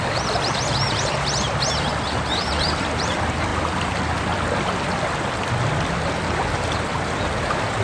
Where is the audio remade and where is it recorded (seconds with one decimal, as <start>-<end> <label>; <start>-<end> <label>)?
0.0-1.9 remade; 1.9-2.5 recorded; 2.5-7.8 remade